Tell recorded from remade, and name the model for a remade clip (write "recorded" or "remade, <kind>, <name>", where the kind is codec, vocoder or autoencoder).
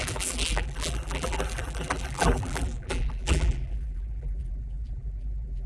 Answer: remade, vocoder, BigVGAN v2